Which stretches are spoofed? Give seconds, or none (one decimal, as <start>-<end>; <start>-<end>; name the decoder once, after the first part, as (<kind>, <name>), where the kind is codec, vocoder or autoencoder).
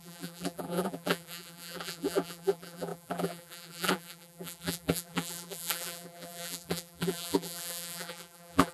0.0-8.7 (vocoder, BigVGAN v2)